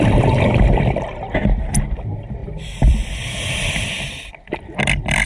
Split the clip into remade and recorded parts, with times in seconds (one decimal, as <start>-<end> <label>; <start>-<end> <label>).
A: 0.0-2.4 recorded; 2.4-4.3 remade; 4.3-5.3 recorded